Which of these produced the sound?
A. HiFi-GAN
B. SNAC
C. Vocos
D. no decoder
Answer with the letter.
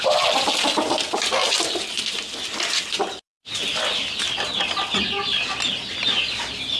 D